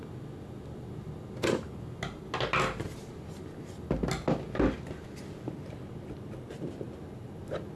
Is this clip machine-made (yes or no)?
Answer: no